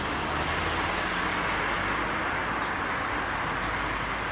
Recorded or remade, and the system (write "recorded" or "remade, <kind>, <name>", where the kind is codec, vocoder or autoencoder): recorded